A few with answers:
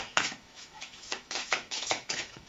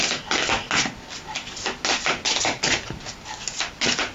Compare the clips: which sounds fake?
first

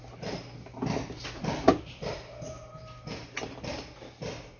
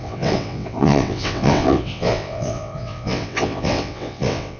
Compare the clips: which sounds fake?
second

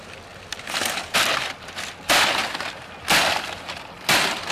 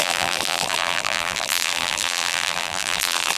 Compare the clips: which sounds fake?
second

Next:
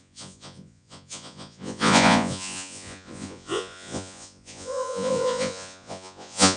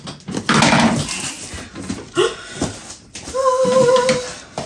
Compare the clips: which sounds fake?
first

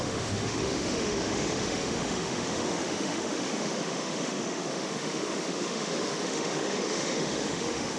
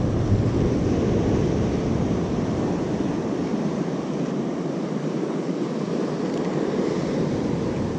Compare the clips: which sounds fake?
first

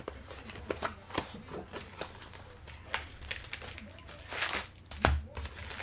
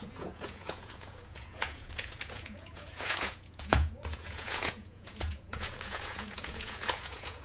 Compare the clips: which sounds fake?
second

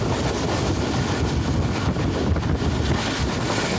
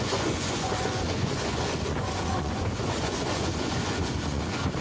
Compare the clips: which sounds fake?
second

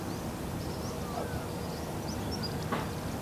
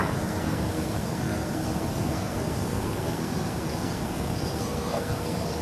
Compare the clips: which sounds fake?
second